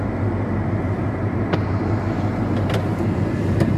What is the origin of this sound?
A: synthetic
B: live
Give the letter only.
B